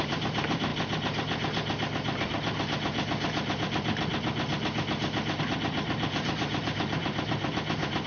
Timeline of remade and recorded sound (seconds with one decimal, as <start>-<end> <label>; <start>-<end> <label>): 0.0-0.7 remade; 0.7-5.4 recorded; 5.4-8.1 remade